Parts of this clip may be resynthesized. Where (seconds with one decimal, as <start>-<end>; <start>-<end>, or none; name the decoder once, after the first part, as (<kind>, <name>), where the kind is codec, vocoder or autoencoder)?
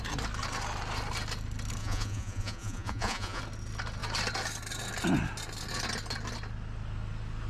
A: 1.8-3.4 (vocoder, Vocos)